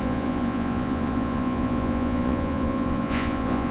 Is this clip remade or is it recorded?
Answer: remade